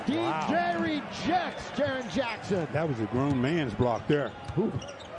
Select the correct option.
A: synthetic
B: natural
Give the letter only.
B